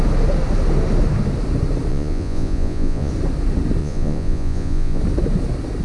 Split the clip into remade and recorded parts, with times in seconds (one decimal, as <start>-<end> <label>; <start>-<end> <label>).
0.0-1.9 recorded; 1.9-3.1 remade; 3.1-3.8 recorded; 3.8-5.0 remade; 5.0-5.8 recorded